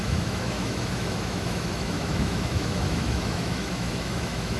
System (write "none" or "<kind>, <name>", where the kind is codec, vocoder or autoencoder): autoencoder, DAC-VAE